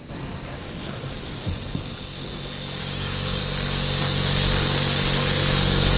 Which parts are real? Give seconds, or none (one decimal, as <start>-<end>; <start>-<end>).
0.0-0.6; 1.4-2.8; 3.4-6.0